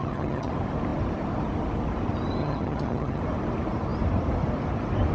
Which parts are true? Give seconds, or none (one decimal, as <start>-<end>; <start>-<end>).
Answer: 0.5-2.4; 3.2-5.1